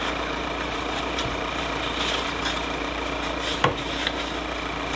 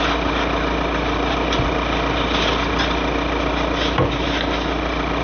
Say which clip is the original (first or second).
second